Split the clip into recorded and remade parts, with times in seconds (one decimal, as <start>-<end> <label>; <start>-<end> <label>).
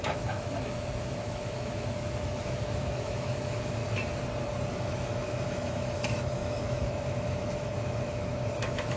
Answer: 0.0-3.8 remade; 3.8-4.7 recorded; 4.7-9.0 remade